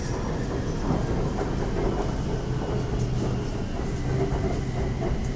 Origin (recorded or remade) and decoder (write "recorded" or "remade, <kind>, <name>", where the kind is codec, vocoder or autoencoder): recorded